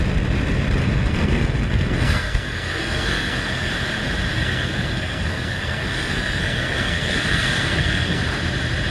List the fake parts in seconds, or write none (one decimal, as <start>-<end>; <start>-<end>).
0.8-3.7; 4.3-8.2